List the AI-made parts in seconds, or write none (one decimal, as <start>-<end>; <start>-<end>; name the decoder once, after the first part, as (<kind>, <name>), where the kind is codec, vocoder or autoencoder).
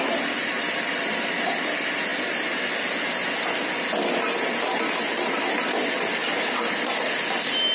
none